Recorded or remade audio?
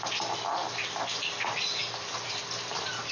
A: remade